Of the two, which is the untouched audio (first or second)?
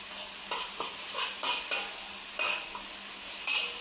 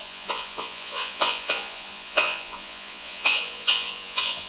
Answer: first